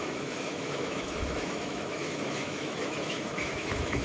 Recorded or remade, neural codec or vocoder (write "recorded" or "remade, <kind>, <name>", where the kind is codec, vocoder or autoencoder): remade, autoencoder, DAC-VAE